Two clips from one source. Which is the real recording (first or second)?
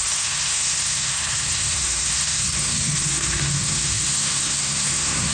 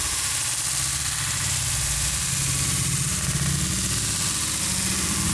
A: second